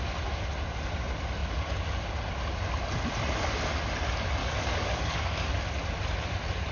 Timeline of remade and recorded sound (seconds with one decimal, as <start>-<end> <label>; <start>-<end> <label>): 0.0-4.4 recorded; 4.4-5.6 remade; 5.6-6.7 recorded